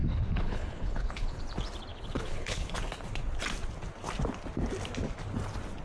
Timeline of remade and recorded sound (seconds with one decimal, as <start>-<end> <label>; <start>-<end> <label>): 0.0-1.4 remade; 1.4-1.9 recorded; 1.9-2.8 remade; 2.8-5.8 recorded